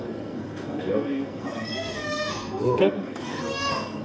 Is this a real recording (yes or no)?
no